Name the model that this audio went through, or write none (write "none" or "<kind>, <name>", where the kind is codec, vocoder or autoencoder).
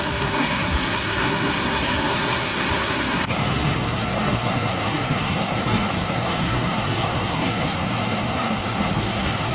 codec, SNAC